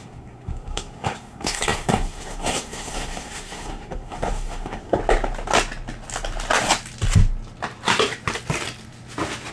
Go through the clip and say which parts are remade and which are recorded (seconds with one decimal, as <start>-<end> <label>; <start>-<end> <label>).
0.0-5.0 remade; 5.0-9.5 recorded